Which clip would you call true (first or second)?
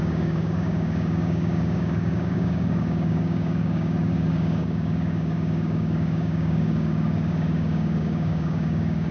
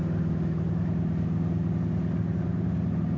second